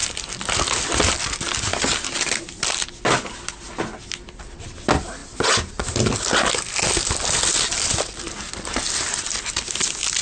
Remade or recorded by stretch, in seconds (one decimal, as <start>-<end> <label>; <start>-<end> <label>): 0.0-10.2 recorded